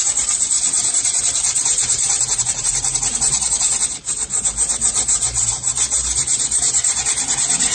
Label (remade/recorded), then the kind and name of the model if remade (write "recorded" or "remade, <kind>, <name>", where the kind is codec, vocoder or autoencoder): remade, vocoder, BigVGAN v2